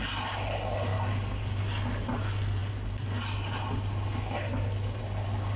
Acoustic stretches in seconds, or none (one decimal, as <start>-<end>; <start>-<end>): 0.0-5.6